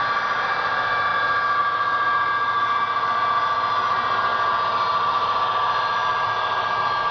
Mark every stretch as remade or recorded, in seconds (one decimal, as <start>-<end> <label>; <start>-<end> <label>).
0.0-7.1 recorded